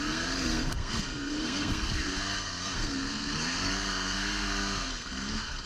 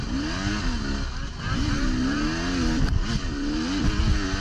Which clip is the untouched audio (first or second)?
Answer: second